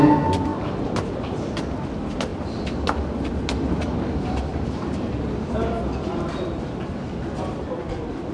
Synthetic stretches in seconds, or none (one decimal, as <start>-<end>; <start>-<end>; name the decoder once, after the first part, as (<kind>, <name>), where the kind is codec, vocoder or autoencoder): 0.5-1.5 (vocoder, BigVGAN v2); 4.5-5.3